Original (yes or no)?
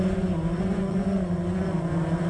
no